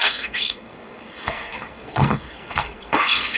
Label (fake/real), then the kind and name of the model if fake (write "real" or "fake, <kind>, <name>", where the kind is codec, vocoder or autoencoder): fake, codec, SNAC